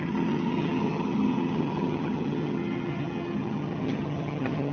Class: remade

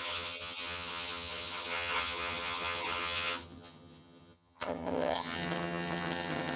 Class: remade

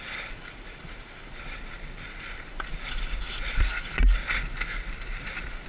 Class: recorded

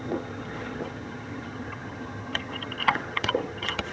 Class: remade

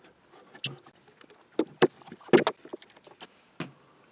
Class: recorded